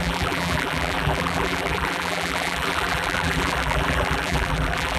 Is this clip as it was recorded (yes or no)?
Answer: no